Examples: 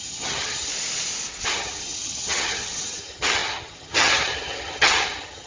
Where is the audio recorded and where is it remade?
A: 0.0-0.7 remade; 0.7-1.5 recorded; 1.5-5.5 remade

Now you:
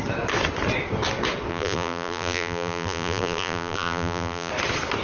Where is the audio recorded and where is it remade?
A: 0.0-1.5 recorded; 1.5-4.5 remade; 4.5-5.0 recorded

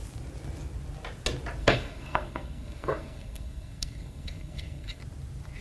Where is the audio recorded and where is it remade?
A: 0.0-1.6 recorded; 1.6-5.0 remade; 5.0-5.6 recorded

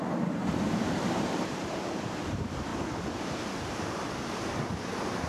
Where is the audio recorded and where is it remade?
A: 0.0-0.4 recorded; 0.4-1.8 remade; 1.8-5.3 recorded